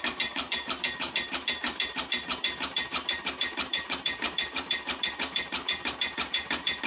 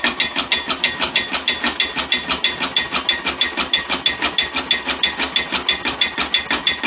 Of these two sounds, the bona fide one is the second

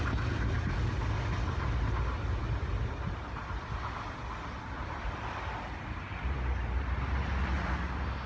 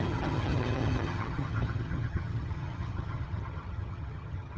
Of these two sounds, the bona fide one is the first